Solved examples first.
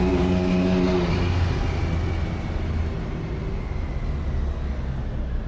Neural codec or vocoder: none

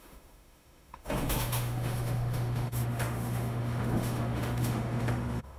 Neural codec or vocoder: autoencoder, DAC-VAE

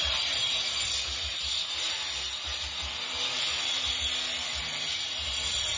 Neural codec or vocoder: none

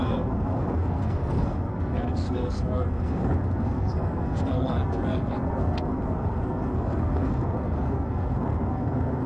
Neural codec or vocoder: codec, SNAC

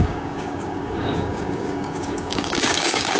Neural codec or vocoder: codec, DAC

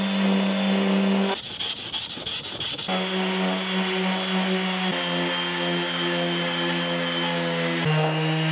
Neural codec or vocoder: none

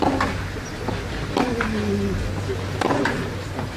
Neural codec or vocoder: none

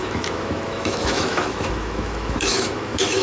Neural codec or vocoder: autoencoder, DAC-VAE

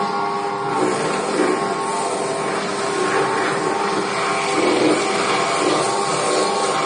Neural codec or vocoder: none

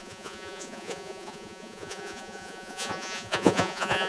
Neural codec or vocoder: vocoder, Vocos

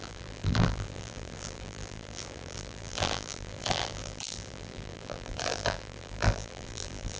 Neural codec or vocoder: vocoder, BigVGAN v2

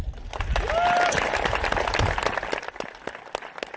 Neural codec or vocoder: none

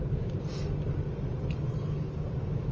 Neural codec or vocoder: none